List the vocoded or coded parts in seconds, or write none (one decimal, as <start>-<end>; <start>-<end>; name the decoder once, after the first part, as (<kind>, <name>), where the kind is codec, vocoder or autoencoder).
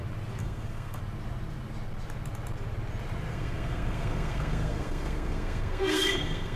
0.4-1.0 (codec, SNAC); 3.3-6.6